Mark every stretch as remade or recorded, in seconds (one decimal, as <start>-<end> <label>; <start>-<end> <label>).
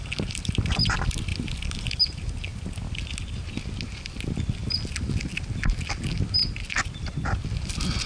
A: 0.0-8.1 recorded